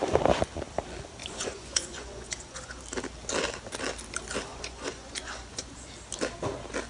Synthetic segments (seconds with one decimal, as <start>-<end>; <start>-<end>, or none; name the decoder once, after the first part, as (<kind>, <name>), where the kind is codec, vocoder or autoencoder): 1.2-2.8 (vocoder, Vocos); 4.5-5.9